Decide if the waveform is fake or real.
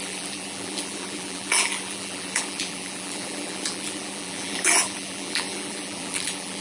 fake